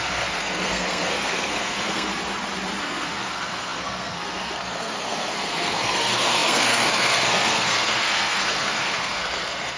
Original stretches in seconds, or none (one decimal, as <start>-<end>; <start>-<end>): 2.1-2.8